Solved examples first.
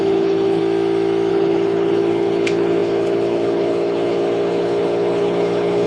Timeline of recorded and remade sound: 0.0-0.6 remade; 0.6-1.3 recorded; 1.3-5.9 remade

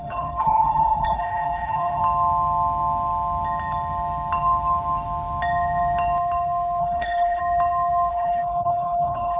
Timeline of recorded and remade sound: 0.0-2.0 remade; 2.0-6.8 recorded; 6.8-7.4 remade; 7.4-8.1 recorded; 8.1-9.4 remade